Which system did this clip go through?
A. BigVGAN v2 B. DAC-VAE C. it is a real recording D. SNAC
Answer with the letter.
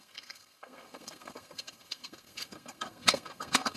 D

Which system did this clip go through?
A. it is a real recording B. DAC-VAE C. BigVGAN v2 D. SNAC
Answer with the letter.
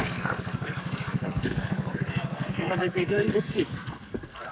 D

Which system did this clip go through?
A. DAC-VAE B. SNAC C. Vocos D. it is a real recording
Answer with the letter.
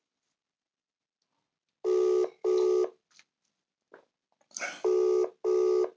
D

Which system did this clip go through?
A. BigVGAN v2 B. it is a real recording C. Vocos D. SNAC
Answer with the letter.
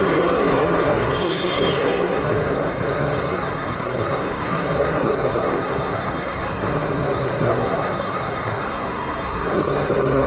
D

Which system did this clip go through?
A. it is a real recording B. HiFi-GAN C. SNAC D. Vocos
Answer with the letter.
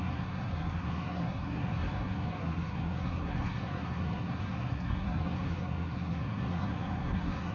C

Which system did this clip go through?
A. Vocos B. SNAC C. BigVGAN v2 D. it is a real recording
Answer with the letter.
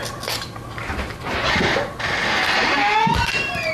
D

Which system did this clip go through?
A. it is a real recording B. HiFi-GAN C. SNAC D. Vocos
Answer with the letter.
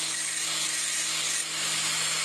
A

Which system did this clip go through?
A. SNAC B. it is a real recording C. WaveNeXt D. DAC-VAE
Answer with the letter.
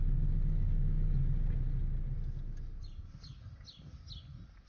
B